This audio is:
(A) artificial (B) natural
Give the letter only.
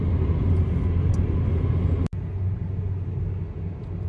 B